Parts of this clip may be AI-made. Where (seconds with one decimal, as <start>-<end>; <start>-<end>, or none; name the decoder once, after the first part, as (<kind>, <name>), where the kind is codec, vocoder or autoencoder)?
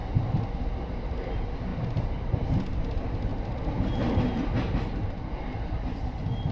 0.0-0.6 (vocoder, BigVGAN v2); 1.7-2.8; 3.3-5.2